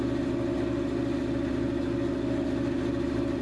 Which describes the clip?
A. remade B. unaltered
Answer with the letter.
B